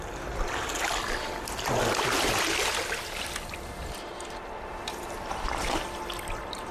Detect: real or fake real